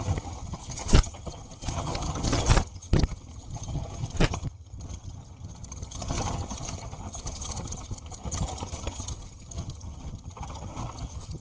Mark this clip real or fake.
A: fake